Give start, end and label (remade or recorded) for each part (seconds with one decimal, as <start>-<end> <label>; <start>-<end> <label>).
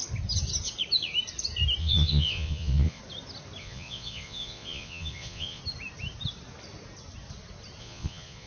0.0-1.8 recorded; 1.8-3.0 remade; 3.0-3.6 recorded; 3.6-5.6 remade; 5.6-7.8 recorded; 7.8-8.5 remade